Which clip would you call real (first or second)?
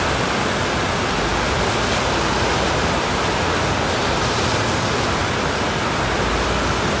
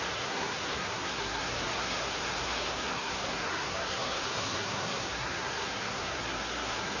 first